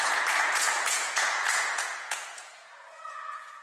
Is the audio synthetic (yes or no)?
yes